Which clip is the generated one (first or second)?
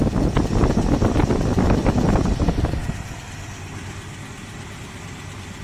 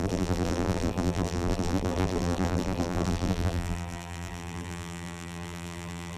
second